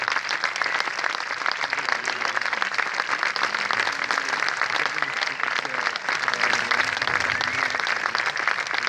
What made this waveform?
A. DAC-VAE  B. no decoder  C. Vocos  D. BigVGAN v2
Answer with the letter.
B